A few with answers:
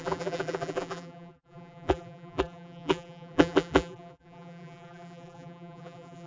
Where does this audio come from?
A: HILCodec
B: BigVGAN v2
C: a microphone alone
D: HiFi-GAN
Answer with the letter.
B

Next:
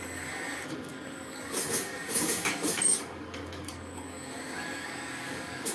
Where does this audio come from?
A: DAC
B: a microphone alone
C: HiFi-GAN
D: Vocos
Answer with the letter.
A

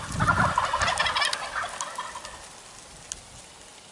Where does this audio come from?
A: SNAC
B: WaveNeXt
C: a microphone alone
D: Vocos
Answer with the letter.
C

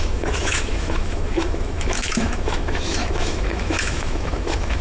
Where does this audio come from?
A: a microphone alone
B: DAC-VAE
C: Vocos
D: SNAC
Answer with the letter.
B